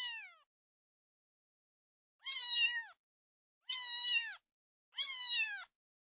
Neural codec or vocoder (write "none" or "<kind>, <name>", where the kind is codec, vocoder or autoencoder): none